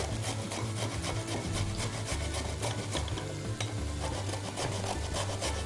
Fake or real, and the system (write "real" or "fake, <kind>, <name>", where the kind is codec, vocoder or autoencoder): real